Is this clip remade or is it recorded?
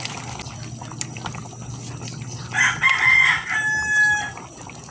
recorded